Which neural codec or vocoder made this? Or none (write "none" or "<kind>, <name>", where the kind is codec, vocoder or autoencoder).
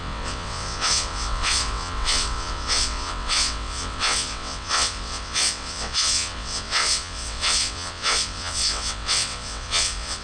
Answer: vocoder, WaveNeXt